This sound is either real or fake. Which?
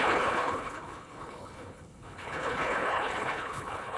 fake